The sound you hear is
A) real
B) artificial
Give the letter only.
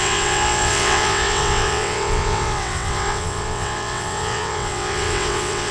B